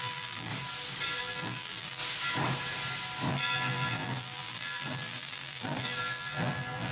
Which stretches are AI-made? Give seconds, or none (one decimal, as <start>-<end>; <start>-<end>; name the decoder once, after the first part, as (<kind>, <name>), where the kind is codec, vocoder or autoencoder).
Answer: 0.0-0.5 (vocoder, BigVGAN v2); 1.2-2.0; 3.3-6.9